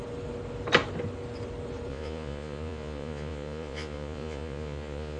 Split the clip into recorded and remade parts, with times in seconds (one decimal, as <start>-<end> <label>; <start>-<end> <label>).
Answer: 0.0-1.9 recorded; 1.9-5.2 remade